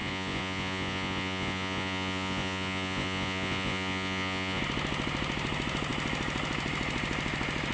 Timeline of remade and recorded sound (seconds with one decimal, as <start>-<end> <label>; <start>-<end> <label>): 0.0-4.6 remade; 4.6-7.7 recorded